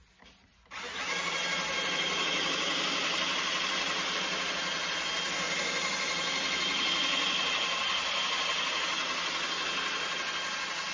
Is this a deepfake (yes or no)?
no